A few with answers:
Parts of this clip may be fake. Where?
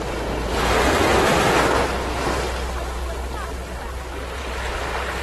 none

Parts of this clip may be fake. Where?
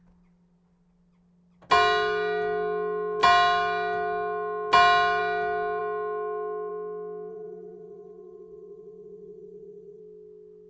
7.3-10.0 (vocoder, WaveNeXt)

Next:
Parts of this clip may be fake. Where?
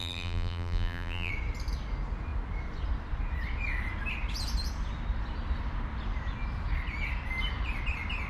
0.0-1.3 (vocoder, BigVGAN v2)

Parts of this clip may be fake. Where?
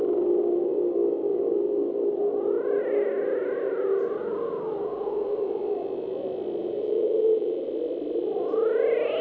6.6-7.7 (vocoder, BigVGAN v2)